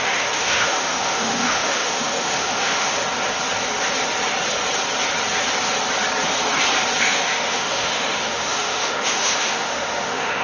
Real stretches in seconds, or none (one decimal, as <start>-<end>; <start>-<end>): 3.0-7.0